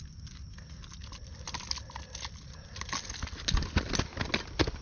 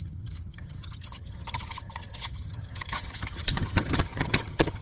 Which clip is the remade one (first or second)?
second